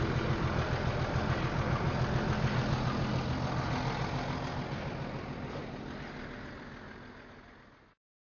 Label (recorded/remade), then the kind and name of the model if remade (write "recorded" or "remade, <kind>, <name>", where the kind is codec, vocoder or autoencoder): recorded